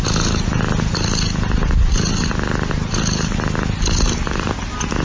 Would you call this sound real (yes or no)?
yes